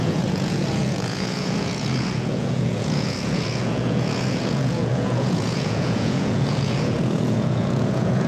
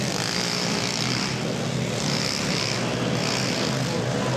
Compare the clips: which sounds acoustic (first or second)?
second